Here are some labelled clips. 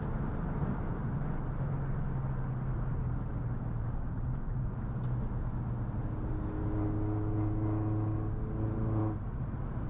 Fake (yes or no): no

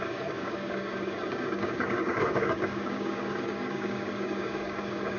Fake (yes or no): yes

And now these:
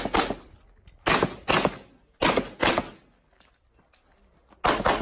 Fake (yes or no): no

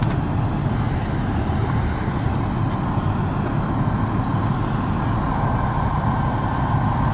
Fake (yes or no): no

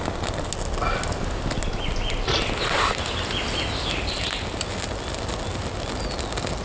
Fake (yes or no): no